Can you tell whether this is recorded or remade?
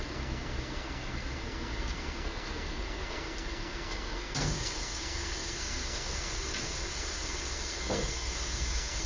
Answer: remade